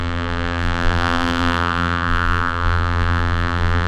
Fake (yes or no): yes